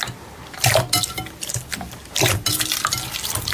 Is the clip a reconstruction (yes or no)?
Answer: no